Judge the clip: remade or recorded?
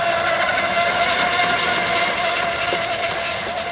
recorded